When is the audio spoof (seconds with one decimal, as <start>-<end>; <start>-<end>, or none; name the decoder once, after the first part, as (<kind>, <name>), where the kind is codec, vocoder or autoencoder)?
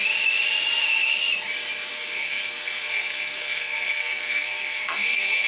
1.9-5.5 (codec, SNAC)